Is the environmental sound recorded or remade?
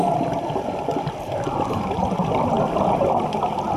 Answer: remade